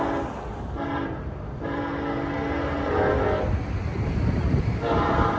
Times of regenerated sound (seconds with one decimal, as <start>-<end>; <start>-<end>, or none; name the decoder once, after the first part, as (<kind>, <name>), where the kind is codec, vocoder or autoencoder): 0.5-1.8 (vocoder, BigVGAN v2); 3.9-4.6